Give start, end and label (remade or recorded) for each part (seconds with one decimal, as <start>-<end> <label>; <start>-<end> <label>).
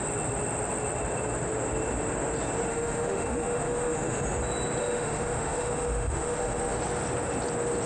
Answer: 0.0-2.7 recorded; 2.7-4.2 remade; 4.2-4.8 recorded; 4.8-6.8 remade; 6.8-7.9 recorded